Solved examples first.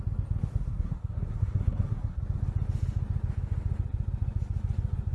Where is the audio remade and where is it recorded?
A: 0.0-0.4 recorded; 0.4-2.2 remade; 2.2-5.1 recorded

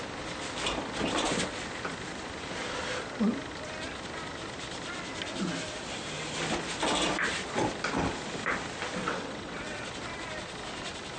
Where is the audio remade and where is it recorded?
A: 0.0-9.0 recorded; 9.0-9.8 remade; 9.8-11.2 recorded

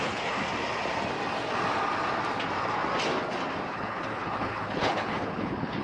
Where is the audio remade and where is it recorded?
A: 0.0-0.4 remade; 0.4-3.7 recorded; 3.7-5.8 remade